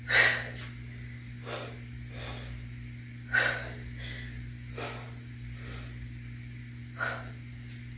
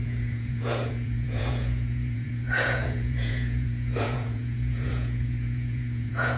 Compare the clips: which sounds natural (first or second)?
first